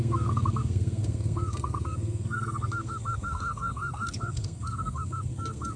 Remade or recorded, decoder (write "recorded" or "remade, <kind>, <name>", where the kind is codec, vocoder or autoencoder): remade, codec, SNAC